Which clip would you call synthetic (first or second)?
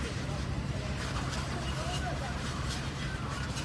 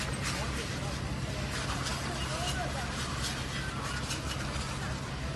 first